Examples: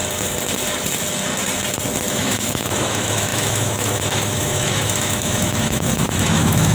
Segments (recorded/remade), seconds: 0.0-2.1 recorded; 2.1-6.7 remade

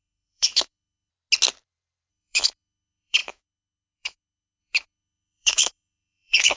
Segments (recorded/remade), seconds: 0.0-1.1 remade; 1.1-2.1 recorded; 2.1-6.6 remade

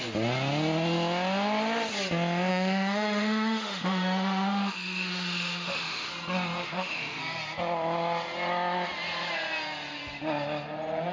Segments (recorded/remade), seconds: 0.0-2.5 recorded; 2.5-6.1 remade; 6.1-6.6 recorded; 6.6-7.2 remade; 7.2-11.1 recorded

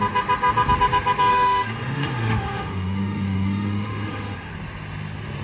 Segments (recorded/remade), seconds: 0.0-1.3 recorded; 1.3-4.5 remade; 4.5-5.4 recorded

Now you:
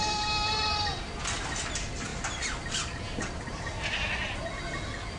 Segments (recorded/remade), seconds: 0.0-5.2 recorded

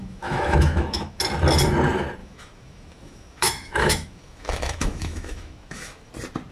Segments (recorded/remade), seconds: 0.0-1.2 remade; 1.2-2.2 recorded; 2.2-6.1 remade; 6.1-6.5 recorded

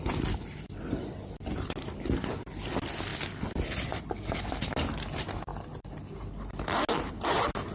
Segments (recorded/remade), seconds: 0.0-7.7 recorded

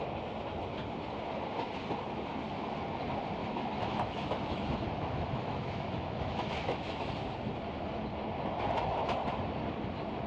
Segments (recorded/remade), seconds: 0.0-3.4 recorded; 3.4-7.1 remade; 7.1-10.3 recorded